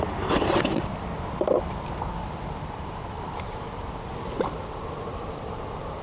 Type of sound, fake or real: fake